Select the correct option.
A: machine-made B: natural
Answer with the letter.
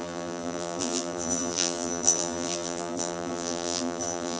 A